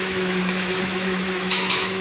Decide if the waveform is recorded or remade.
remade